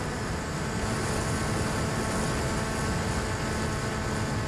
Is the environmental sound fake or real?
real